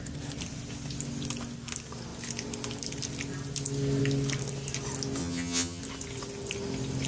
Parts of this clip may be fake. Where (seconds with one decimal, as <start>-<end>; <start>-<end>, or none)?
5.2-5.8